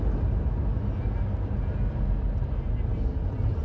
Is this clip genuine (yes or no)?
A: yes